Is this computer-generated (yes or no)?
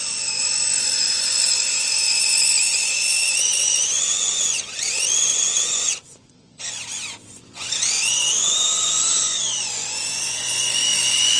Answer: yes